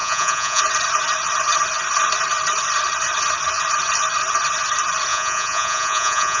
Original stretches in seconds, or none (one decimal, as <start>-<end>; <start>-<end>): 0.6-5.1